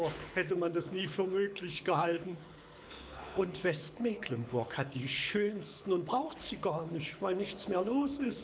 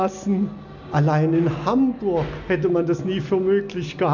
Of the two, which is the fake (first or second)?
first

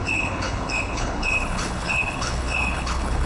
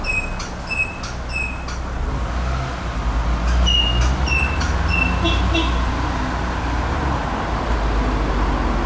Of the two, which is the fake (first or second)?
first